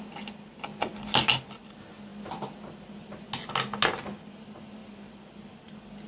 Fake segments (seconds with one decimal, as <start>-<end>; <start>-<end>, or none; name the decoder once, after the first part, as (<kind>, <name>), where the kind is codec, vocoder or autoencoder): none